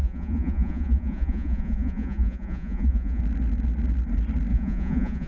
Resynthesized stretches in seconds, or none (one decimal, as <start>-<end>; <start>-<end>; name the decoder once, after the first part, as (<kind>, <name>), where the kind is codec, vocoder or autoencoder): 0.0-3.2 (vocoder, Vocos); 4.5-5.3

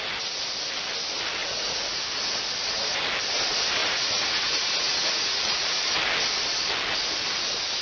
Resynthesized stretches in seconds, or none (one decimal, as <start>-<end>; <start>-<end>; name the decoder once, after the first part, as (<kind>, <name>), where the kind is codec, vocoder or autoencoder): 1.4-2.0 (vocoder, Vocos); 3.8-5.8

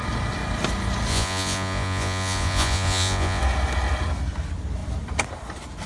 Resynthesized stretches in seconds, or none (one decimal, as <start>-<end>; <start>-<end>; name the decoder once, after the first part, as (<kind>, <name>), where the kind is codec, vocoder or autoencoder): 1.1-3.4 (vocoder, Vocos)

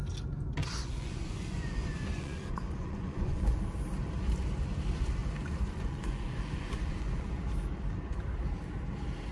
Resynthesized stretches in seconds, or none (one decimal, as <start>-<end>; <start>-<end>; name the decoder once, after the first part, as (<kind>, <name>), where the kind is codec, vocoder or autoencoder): 0.6-3.6 (vocoder, Vocos); 5.2-7.4

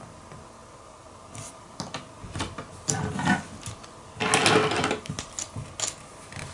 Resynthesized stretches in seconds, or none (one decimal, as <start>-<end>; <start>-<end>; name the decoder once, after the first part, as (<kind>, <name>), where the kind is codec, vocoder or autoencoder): none

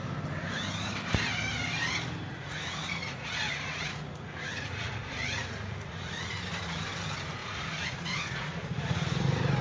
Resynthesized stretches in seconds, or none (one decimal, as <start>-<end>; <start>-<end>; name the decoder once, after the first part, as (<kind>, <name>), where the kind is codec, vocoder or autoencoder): 2.3-6.3 (vocoder, Vocos); 7.4-9.6

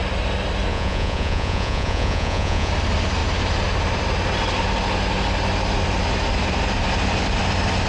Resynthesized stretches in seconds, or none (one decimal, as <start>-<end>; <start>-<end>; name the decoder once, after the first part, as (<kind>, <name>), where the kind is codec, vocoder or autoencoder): 0.7-2.7 (vocoder, Vocos)

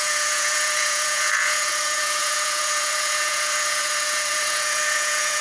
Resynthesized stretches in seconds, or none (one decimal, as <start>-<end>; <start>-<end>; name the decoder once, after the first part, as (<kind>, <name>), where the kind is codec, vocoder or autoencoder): 0.0-5.4 (vocoder, Vocos)